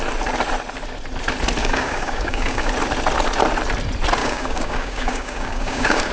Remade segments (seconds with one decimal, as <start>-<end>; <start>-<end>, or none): 1.6-2.7; 4.2-6.1